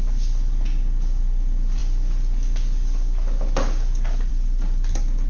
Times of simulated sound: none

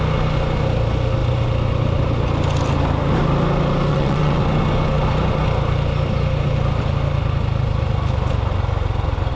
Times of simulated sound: 3.9-4.4

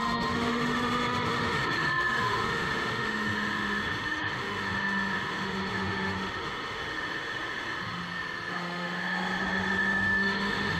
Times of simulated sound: 0.0-8.0; 8.5-10.8

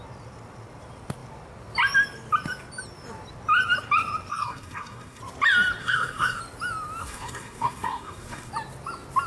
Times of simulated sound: 4.3-5.2; 5.8-6.4; 7.0-8.5

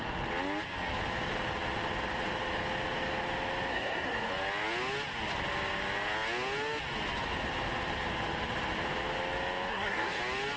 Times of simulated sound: 3.7-4.3; 9.7-10.2

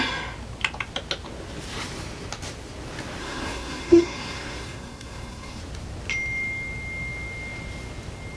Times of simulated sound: 3.2-5.6

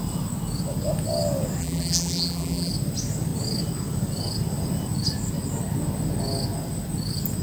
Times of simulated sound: 1.6-2.7

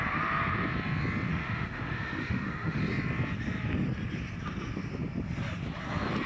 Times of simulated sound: 1.3-2.8